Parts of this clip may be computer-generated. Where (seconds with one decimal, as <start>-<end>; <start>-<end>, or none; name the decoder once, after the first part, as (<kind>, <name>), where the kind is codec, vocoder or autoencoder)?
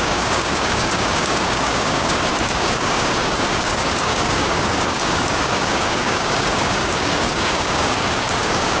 0.0-8.8 (codec, DAC)